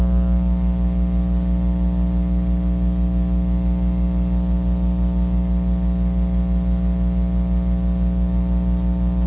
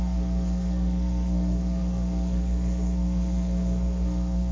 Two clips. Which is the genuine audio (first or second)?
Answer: first